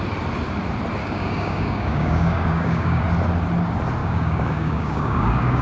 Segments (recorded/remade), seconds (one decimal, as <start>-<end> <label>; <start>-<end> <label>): 0.0-1.0 recorded; 1.0-3.0 remade; 3.0-4.0 recorded; 4.0-5.6 remade